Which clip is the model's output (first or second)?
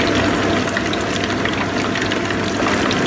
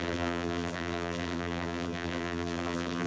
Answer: second